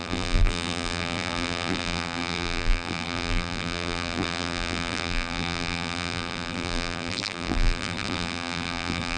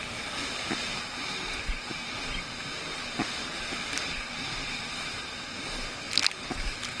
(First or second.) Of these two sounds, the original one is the second